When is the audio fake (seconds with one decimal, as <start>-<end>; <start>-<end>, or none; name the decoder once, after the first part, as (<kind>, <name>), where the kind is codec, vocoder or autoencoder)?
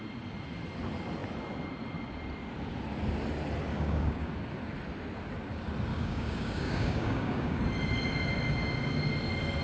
3.7-4.3 (codec, DAC); 5.9-7.6